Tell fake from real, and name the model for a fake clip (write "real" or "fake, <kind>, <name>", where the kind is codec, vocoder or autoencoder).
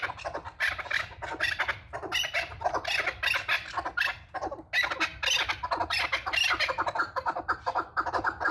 real